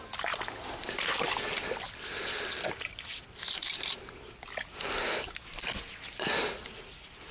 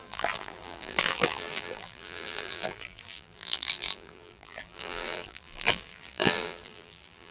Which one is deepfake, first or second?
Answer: second